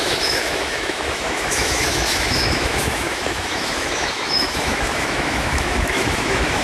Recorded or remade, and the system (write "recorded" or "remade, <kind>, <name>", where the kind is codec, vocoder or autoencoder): remade, autoencoder, DAC-VAE